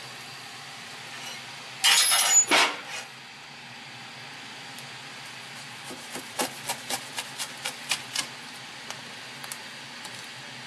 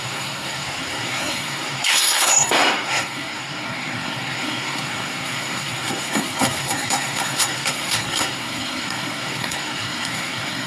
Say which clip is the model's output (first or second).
second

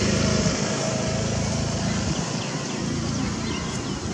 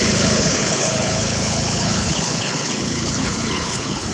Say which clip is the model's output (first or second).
second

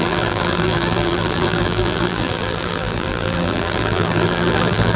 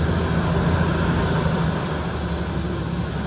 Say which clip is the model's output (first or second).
first